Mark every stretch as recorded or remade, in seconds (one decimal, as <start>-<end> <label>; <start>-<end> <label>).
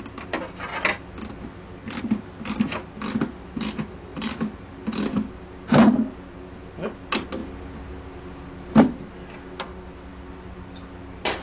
0.0-4.1 recorded; 4.1-4.7 remade; 4.7-11.4 recorded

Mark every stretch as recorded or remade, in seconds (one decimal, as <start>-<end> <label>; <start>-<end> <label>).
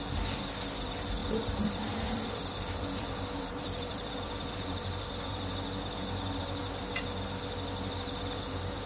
0.0-1.2 recorded; 1.2-6.4 remade; 6.4-8.9 recorded